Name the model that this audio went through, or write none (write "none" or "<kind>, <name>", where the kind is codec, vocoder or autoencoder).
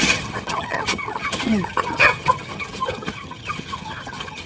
vocoder, HiFi-GAN